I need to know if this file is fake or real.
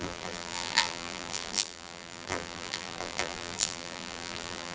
fake